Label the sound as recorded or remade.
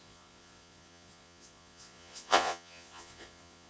remade